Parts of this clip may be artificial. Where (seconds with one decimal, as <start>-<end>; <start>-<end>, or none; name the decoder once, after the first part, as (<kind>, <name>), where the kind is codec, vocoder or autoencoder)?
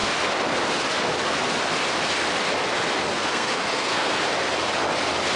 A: 3.1-4.2 (codec, SNAC)